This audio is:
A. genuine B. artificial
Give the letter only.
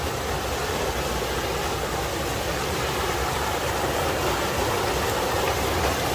A